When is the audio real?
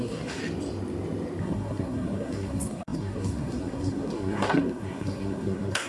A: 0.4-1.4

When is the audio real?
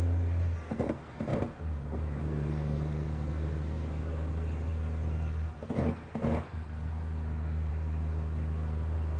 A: none